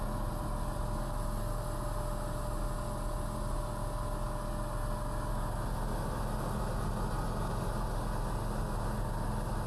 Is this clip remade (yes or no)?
no